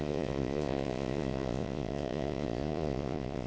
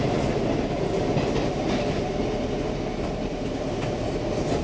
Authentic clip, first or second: second